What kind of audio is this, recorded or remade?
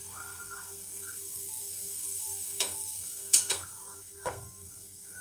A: remade